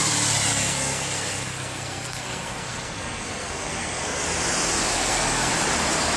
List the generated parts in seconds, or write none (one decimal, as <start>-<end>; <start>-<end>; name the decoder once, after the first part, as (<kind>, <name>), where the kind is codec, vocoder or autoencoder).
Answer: 0.5-4.2 (codec, SNAC); 4.9-5.5